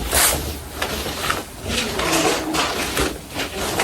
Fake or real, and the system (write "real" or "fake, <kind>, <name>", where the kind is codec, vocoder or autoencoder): real